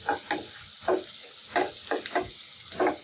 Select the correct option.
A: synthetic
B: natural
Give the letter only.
B